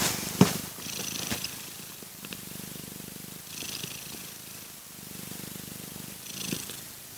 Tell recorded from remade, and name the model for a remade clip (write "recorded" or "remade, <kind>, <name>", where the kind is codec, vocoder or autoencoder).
remade, vocoder, BigVGAN v2